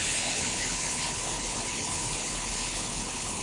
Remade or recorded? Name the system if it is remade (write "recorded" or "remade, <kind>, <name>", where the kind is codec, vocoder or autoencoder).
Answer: remade, codec, HILCodec